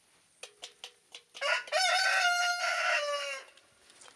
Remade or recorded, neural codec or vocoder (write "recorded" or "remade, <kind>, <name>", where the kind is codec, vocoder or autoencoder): recorded